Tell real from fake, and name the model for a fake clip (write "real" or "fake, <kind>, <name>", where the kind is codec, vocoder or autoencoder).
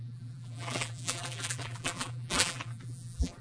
fake, vocoder, BigVGAN v2